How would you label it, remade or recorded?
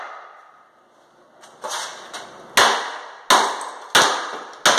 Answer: recorded